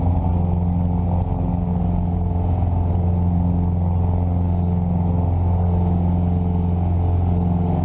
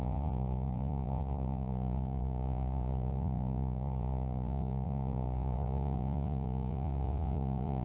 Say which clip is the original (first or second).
first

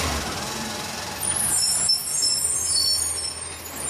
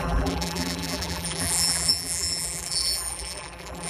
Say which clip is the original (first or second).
first